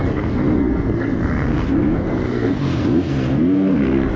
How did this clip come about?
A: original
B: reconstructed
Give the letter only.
B